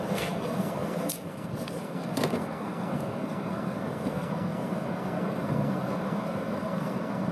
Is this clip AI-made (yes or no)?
yes